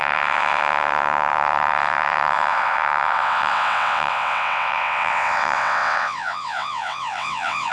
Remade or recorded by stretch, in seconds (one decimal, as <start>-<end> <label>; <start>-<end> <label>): 0.0-7.7 remade